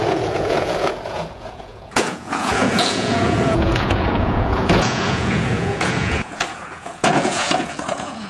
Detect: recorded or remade remade